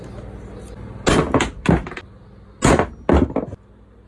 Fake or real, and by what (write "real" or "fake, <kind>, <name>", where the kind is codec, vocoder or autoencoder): real